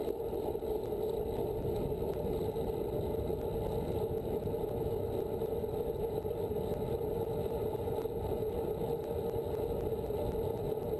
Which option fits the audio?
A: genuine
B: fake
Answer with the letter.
A